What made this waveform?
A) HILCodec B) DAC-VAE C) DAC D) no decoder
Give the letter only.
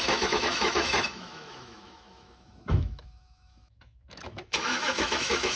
B